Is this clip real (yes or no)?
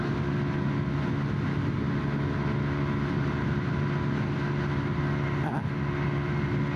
yes